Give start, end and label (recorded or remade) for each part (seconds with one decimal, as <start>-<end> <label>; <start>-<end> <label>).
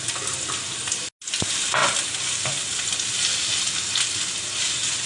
0.0-5.1 recorded